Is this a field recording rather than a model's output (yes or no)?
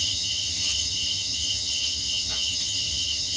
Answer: no